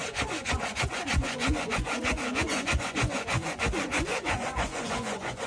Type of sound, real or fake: fake